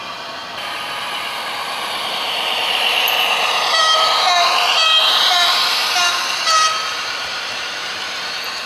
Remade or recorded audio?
remade